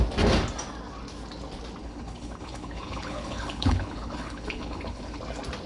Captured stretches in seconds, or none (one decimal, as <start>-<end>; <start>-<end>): 0.0-1.8; 5.2-5.7